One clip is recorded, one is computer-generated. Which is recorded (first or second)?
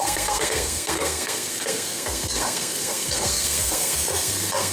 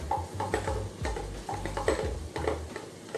second